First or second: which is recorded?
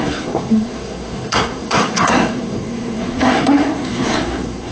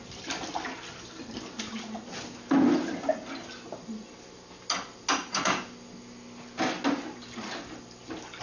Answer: second